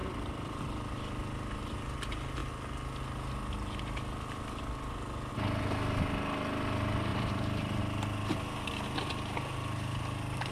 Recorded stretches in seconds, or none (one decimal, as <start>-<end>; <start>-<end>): 0.9-7.1; 7.8-10.5